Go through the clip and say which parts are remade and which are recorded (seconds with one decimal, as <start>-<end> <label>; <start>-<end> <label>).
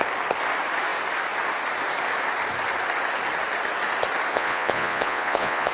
0.0-4.3 recorded; 4.3-5.7 remade